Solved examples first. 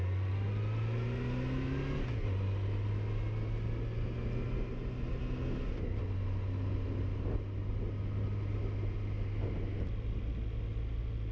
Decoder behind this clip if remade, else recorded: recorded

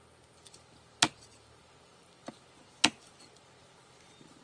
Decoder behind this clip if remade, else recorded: recorded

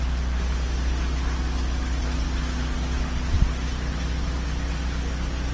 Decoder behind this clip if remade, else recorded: recorded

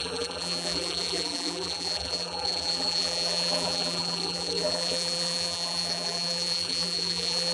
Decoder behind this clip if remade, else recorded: remade, vocoder, BigVGAN v2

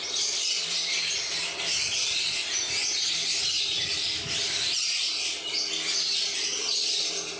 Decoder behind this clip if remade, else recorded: recorded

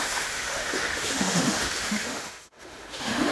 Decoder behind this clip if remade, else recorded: remade, autoencoder, DAC-VAE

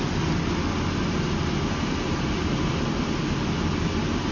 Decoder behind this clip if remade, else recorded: recorded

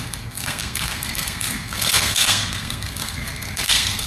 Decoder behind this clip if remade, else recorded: remade, codec, SNAC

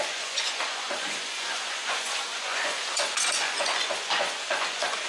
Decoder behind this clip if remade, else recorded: remade, vocoder, Vocos